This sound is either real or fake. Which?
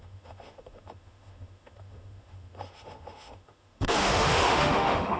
fake